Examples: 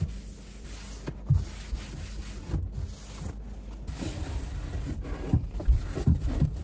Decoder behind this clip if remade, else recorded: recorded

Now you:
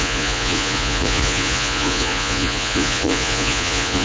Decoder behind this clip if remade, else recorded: remade, vocoder, Vocos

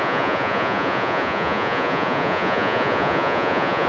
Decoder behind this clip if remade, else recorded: remade, vocoder, Vocos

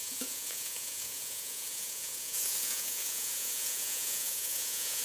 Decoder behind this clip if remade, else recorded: remade, vocoder, Vocos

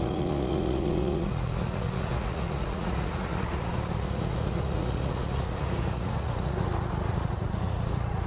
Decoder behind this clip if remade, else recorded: remade, vocoder, Vocos